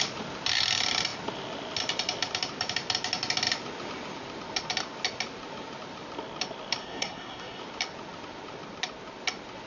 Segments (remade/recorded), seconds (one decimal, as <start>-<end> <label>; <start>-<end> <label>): 0.0-6.8 recorded; 6.8-7.6 remade; 7.6-9.7 recorded